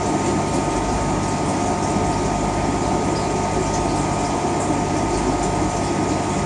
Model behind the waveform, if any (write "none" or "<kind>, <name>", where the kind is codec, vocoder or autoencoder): none